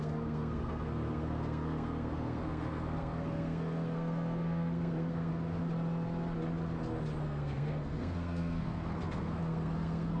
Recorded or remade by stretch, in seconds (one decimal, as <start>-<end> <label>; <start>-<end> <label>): 0.0-5.3 remade; 5.3-7.2 recorded; 7.2-10.2 remade